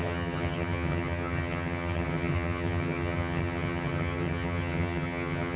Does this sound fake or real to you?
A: fake